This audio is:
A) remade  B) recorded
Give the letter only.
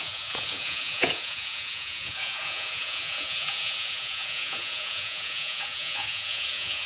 A